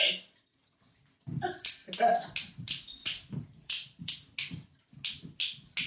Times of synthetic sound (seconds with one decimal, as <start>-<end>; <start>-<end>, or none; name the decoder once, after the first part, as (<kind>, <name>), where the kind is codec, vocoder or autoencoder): 3.0-4.1 (vocoder, BigVGAN v2)